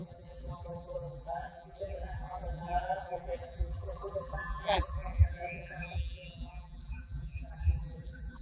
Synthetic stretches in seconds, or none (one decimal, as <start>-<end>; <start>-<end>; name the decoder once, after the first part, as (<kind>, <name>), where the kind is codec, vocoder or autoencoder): 0.0-8.4 (vocoder, BigVGAN v2)